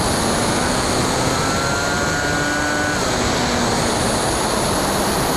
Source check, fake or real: real